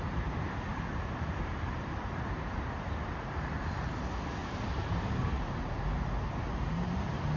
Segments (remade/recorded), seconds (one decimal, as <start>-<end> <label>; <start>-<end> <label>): 0.0-0.7 recorded; 0.7-4.0 remade; 4.0-4.4 recorded; 4.4-7.4 remade